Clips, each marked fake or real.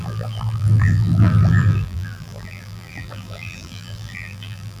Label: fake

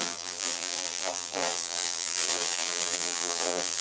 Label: fake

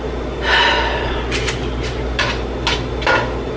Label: real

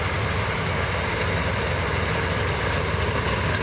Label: fake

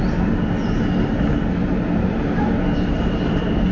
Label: real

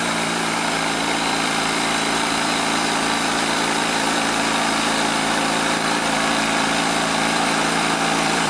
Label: fake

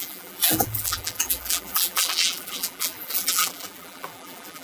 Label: fake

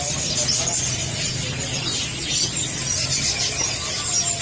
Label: real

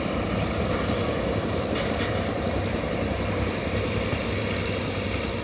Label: fake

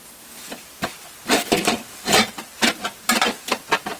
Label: real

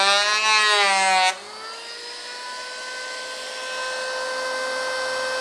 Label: real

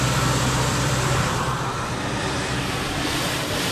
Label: fake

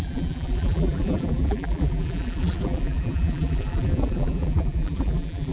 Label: fake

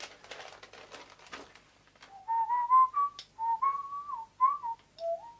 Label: real